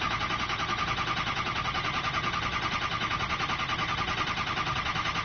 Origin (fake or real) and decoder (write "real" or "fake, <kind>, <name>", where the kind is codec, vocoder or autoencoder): real